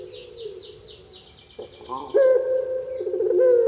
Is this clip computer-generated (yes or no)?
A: no